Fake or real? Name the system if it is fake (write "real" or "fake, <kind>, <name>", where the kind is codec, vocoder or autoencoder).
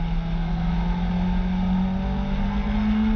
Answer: real